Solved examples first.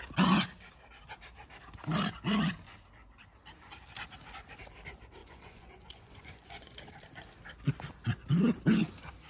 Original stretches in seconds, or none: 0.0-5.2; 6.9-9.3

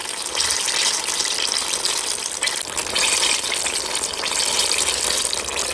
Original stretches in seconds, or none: 0.0-5.7

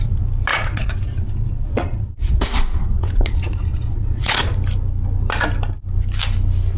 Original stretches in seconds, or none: 0.0-0.5; 4.5-6.8

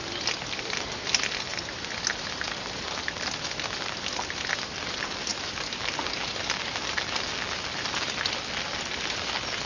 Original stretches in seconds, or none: 0.0-9.7

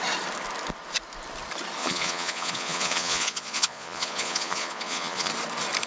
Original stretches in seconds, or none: 0.0-1.8; 5.3-5.9